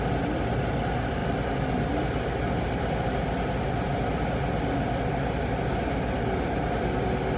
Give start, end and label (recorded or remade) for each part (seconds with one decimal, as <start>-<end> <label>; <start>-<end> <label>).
0.0-7.4 recorded